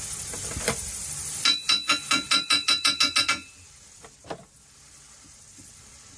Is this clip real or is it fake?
real